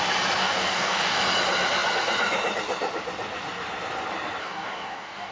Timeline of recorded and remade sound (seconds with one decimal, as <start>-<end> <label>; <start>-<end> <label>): 0.0-0.4 recorded; 0.4-1.2 remade; 1.2-4.4 recorded; 4.4-5.3 remade